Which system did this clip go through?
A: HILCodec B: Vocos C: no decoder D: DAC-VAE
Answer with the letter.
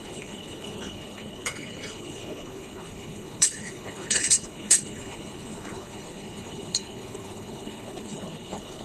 A